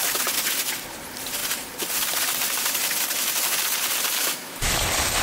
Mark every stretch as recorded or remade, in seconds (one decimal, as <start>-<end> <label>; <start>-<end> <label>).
0.0-4.2 recorded; 4.2-4.8 remade; 4.8-5.2 recorded